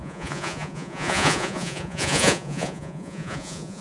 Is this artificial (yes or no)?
yes